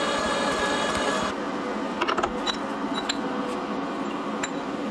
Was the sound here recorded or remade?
recorded